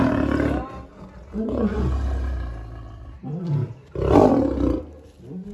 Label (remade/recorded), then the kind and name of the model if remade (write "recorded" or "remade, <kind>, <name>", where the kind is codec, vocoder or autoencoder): recorded